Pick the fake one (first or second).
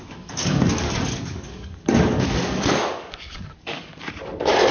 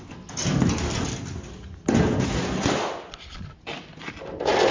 first